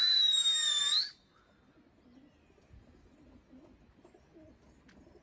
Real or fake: real